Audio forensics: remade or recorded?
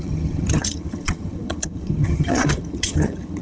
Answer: remade